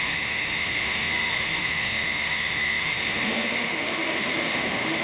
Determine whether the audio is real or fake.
fake